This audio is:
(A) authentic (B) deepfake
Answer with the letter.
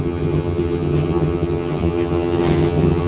B